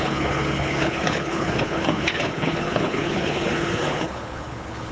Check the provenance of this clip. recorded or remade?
remade